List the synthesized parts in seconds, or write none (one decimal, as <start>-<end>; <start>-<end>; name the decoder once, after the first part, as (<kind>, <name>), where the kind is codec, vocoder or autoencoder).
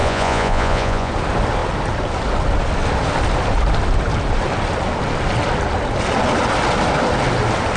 0.0-1.1 (vocoder, Vocos)